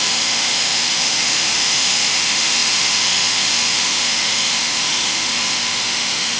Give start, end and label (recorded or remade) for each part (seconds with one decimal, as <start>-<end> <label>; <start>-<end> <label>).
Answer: 0.0-6.4 remade